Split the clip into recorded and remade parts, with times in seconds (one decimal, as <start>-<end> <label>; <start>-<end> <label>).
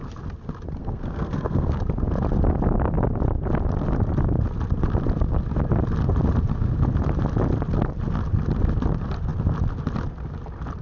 0.0-0.8 recorded; 0.8-1.8 remade; 1.8-10.8 recorded